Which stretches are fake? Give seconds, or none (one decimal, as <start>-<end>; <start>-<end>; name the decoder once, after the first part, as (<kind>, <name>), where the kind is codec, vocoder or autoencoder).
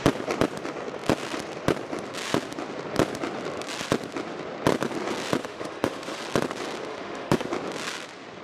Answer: 5.4-6.2 (autoencoder, DAC-VAE); 6.9-7.5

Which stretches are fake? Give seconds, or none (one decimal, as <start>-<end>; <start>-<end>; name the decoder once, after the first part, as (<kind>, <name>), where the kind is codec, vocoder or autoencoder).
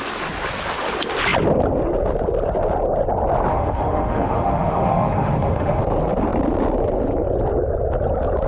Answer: 3.5-5.8 (autoencoder, DAC-VAE)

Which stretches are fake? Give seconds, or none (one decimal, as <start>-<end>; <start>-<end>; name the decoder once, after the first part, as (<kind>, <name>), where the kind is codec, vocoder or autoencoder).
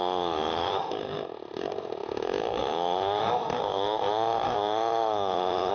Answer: 0.0-5.7 (autoencoder, DAC-VAE)